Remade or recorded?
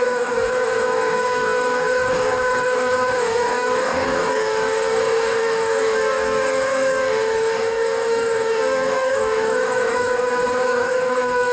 remade